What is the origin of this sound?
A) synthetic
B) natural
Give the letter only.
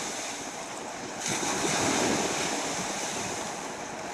B